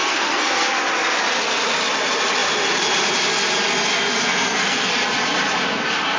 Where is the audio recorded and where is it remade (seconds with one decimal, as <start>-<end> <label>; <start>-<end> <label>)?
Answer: 0.0-0.7 remade; 0.7-4.3 recorded; 4.3-4.9 remade; 4.9-6.2 recorded

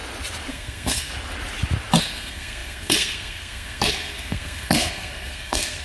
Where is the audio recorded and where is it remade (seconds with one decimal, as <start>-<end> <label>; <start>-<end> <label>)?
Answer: 0.0-0.5 recorded; 0.5-1.1 remade; 1.1-2.0 recorded; 2.0-5.8 remade

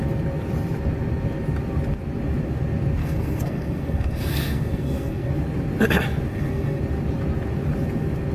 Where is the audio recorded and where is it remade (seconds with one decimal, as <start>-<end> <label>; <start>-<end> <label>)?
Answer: 0.0-3.0 recorded; 3.0-5.3 remade; 5.3-6.3 recorded; 6.3-6.8 remade; 6.8-8.3 recorded

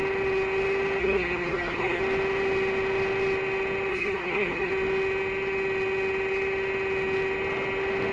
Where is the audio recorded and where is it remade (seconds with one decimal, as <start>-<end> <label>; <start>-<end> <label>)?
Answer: 0.0-1.0 recorded; 1.0-2.0 remade; 2.0-3.9 recorded; 3.9-4.7 remade; 4.7-8.1 recorded

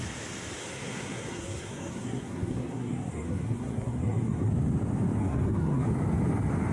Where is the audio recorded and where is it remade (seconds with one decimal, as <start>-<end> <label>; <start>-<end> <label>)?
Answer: 0.0-0.6 recorded; 0.6-4.5 remade; 4.5-5.2 recorded; 5.2-5.9 remade; 5.9-6.7 recorded

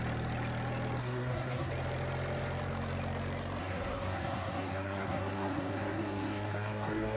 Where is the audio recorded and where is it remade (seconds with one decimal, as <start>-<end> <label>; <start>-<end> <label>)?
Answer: 0.0-1.0 recorded; 1.0-1.7 remade; 1.7-3.6 recorded; 3.6-7.2 remade